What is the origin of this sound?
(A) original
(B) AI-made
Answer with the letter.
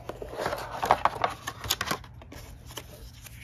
A